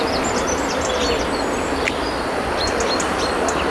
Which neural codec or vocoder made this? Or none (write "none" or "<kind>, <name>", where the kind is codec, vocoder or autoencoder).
none